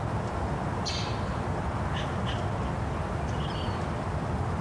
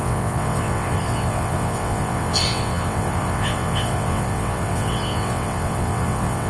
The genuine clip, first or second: first